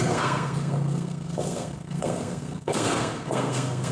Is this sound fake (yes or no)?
yes